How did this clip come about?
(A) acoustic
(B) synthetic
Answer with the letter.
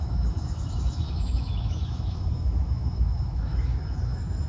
B